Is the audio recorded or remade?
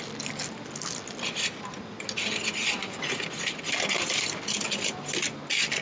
recorded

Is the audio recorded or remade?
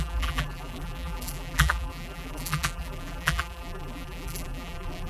remade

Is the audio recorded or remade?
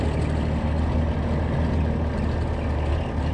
recorded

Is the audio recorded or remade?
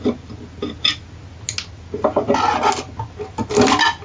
recorded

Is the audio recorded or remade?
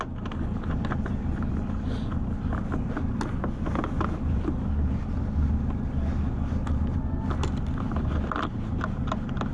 recorded